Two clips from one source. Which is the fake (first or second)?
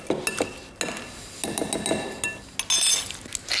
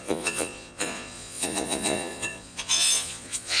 second